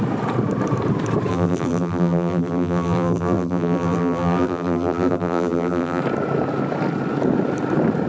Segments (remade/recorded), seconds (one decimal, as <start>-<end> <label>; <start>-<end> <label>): 0.0-1.3 recorded; 1.3-6.0 remade; 6.0-8.1 recorded